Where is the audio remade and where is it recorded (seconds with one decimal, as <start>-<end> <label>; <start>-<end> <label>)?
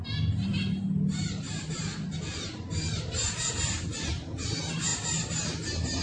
0.0-6.0 recorded